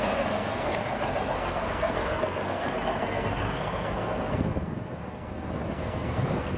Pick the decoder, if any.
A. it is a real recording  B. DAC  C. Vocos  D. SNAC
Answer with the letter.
D